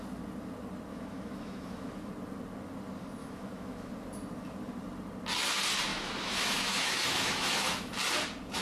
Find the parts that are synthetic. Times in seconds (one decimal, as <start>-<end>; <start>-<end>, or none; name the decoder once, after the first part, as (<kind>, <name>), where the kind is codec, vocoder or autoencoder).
0.9-2.1 (autoencoder, DAC-VAE); 3.2-3.9; 5.9-7.9